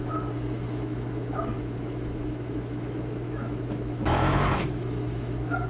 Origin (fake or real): fake